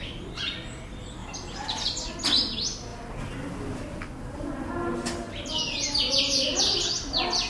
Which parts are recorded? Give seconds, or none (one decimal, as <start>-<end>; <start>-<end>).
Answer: 0.0-1.2; 2.1-7.5